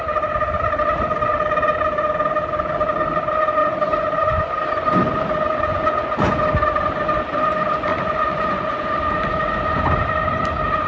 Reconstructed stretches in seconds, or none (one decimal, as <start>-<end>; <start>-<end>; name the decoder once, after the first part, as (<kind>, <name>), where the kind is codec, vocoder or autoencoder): 3.6-4.5 (vocoder, Vocos); 5.7-6.4; 7.9-9.9